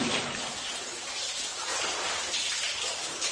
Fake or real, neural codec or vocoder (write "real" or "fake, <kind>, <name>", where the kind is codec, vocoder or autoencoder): real